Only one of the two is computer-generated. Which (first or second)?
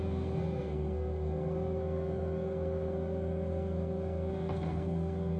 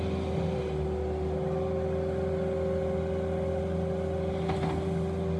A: first